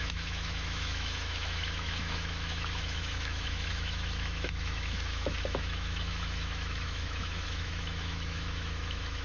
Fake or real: fake